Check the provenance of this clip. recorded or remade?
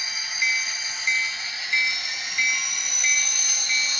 recorded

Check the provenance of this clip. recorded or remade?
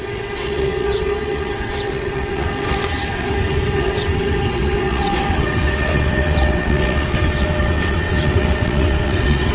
remade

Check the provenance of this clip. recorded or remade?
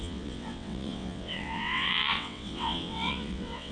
remade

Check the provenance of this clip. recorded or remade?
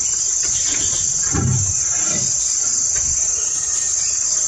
recorded